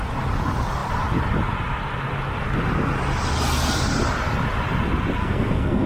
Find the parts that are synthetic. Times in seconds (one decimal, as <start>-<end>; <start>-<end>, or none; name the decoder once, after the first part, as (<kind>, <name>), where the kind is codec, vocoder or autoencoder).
5.2-5.9 (codec, SNAC)